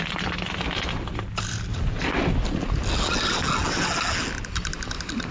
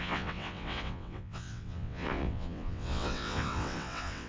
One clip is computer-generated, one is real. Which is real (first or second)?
first